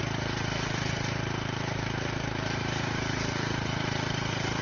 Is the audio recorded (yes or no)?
no